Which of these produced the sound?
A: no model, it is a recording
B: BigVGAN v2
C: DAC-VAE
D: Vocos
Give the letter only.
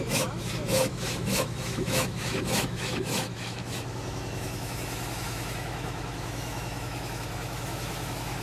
C